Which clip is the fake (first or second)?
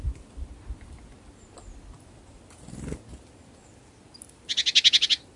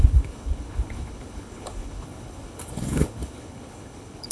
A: second